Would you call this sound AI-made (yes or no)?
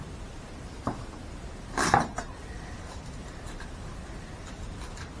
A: yes